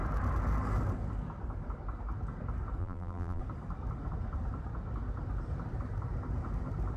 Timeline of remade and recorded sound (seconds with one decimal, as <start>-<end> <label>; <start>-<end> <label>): 0.0-2.8 recorded; 2.8-3.4 remade; 3.4-7.0 recorded